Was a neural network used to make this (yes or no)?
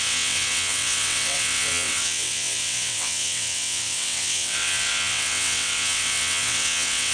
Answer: yes